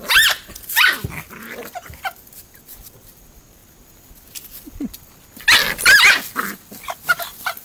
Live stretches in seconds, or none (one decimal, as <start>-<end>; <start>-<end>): 0.0-7.6